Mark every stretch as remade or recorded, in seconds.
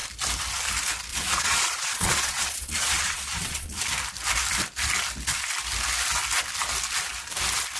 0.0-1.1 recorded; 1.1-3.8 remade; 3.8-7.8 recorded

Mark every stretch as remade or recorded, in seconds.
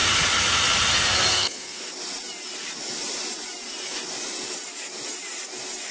0.0-1.3 recorded; 1.3-1.8 remade; 1.8-5.9 recorded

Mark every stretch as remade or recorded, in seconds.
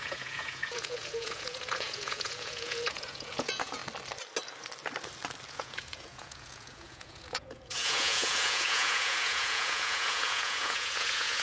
0.0-3.8 remade; 3.8-5.5 recorded; 5.5-11.4 remade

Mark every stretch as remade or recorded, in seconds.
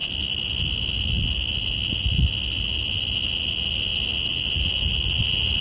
0.0-5.6 recorded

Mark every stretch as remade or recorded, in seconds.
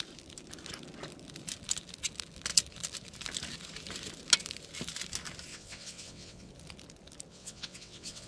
0.0-5.5 recorded; 5.5-6.5 remade; 6.5-7.3 recorded; 7.3-8.3 remade